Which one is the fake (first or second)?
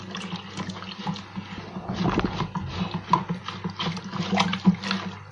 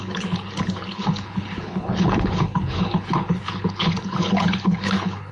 second